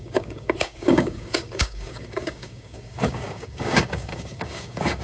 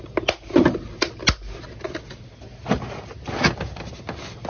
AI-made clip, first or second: first